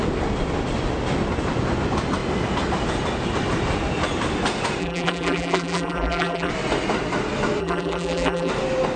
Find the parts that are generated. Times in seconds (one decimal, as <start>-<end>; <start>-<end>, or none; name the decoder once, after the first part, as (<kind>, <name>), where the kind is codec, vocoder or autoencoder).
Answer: 4.8-6.5 (vocoder, BigVGAN v2); 7.6-8.5

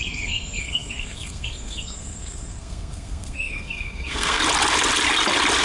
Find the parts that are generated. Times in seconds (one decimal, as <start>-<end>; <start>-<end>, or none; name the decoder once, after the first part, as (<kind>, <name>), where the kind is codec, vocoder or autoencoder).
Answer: 0.0-4.4 (codec, SNAC)

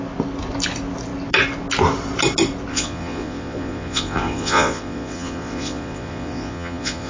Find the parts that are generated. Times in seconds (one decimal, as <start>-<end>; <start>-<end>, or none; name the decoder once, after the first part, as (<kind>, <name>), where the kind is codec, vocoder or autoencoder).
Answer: 2.7-7.1 (vocoder, Vocos)

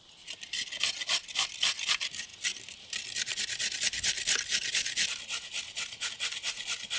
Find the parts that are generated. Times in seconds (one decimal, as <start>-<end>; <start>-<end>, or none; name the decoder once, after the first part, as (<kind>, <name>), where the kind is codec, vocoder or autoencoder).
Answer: none

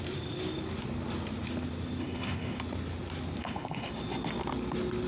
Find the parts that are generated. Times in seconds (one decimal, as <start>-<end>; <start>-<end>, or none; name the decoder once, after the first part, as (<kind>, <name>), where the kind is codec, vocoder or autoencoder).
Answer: 2.0-2.6 (codec, HILCodec); 3.4-3.9

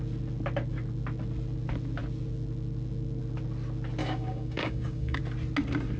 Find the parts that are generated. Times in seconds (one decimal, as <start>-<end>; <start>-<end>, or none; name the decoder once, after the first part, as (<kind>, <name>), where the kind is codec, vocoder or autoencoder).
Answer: 4.0-5.2 (codec, DAC)

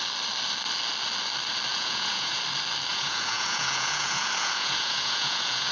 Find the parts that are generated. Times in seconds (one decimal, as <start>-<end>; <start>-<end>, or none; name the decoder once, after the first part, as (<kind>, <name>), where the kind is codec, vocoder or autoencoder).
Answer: 1.7-2.4 (vocoder, Vocos); 2.9-5.7

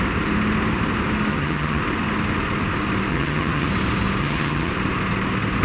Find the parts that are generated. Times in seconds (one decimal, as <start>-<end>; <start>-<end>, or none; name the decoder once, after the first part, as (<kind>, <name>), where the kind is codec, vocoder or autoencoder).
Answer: 1.3-1.8 (vocoder, HiFi-GAN); 3.1-3.7; 4.2-4.7